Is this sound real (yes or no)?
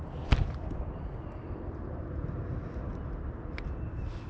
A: yes